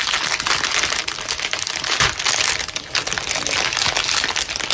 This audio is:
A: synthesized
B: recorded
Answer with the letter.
B